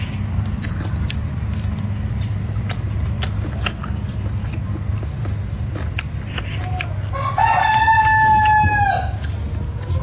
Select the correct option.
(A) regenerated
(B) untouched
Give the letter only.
B